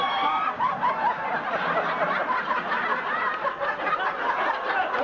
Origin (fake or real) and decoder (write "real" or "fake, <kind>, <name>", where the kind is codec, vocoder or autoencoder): real